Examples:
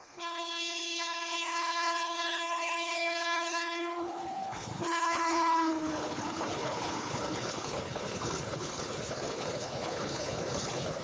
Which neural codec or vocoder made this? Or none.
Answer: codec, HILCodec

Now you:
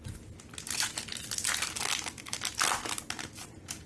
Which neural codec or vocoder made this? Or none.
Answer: none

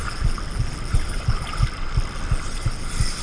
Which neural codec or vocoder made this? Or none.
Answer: none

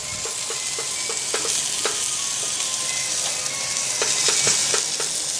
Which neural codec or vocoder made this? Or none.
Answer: none